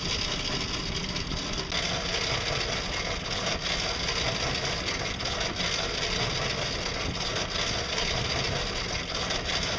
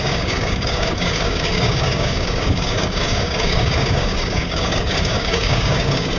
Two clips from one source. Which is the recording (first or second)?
first